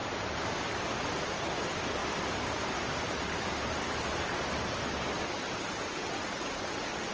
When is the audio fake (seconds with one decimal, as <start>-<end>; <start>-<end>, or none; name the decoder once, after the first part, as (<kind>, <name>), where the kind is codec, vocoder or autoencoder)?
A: 0.0-0.6 (vocoder, BigVGAN v2); 2.0-4.4